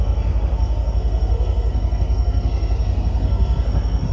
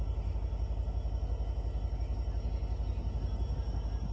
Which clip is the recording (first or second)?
second